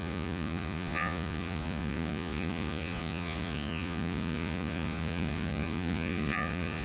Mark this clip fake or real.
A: fake